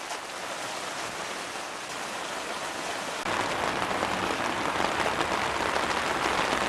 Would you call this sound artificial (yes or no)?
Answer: no